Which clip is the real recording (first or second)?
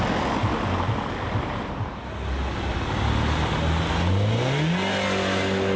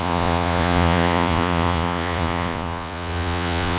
first